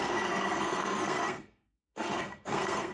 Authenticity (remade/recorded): remade